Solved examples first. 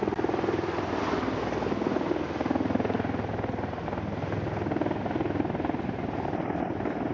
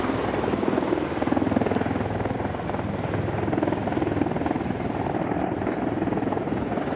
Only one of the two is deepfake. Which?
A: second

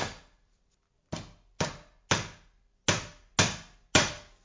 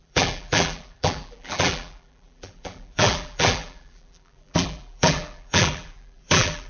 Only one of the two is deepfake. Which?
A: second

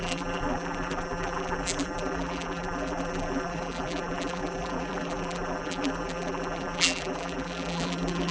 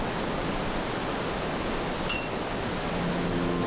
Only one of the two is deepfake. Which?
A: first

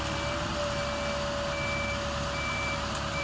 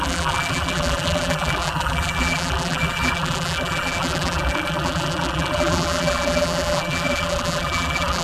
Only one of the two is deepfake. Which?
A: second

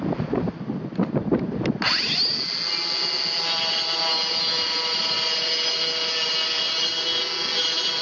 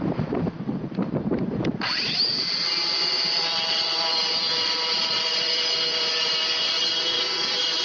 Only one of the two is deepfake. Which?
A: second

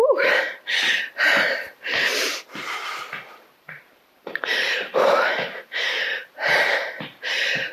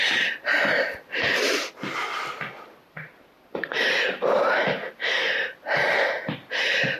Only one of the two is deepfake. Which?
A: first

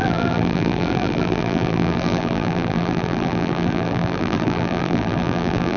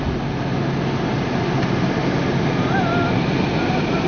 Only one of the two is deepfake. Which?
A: first